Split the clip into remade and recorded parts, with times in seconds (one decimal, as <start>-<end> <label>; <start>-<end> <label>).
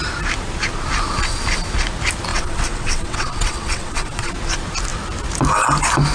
0.0-2.3 recorded; 2.3-4.3 remade; 4.3-6.1 recorded